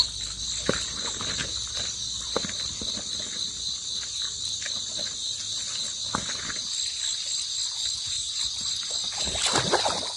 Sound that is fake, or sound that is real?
real